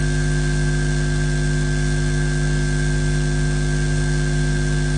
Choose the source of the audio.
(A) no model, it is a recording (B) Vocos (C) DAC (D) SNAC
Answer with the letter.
A